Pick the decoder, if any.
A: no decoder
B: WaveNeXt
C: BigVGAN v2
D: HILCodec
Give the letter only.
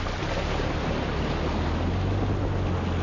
A